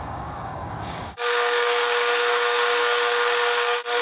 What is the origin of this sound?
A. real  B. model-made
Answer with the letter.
B